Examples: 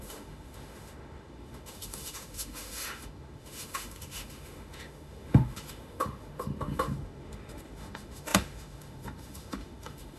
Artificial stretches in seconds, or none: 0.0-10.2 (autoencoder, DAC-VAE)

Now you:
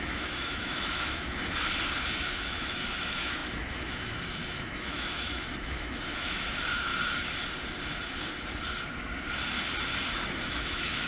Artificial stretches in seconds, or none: 0.0-1.4 (autoencoder, DAC-VAE); 2.1-6.9; 10.4-11.1

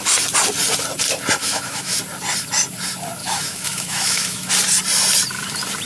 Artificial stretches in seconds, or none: 1.4-2.0 (autoencoder, DAC-VAE); 3.2-4.5

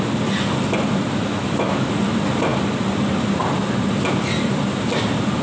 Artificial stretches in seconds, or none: 1.3-1.9 (autoencoder, DAC-VAE)

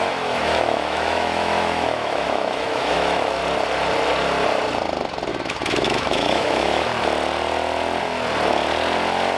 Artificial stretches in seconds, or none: 0.0-3.4 (autoencoder, DAC-VAE); 5.3-6.9

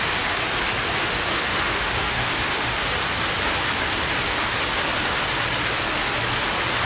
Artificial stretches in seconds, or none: 1.0-2.8 (autoencoder, DAC-VAE)